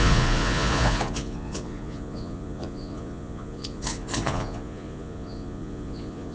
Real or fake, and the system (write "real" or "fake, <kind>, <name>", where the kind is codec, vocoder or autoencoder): fake, vocoder, Vocos